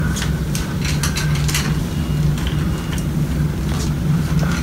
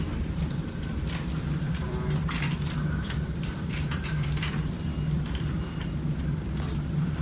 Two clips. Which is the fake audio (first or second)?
second